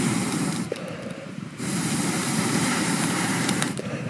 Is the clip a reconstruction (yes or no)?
yes